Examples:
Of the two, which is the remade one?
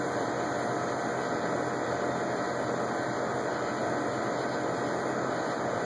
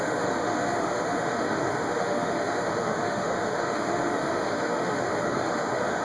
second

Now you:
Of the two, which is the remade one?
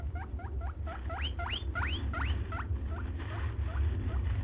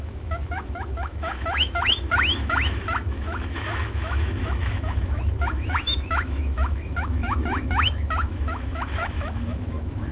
second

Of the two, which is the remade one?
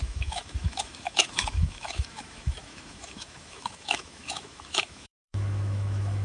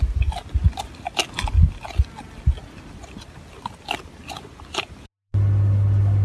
first